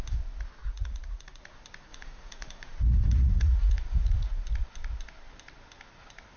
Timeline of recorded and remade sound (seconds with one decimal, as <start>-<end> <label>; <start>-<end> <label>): 0.0-0.6 recorded; 0.6-1.4 remade; 1.4-1.9 recorded; 1.9-4.3 remade; 4.3-6.4 recorded